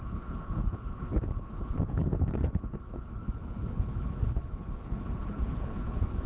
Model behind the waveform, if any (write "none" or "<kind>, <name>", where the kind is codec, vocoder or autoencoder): codec, HILCodec